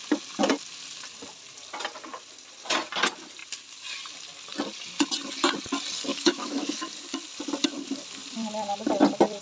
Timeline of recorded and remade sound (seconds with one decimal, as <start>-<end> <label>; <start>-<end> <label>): 0.0-6.1 recorded; 6.1-6.8 remade; 6.8-9.4 recorded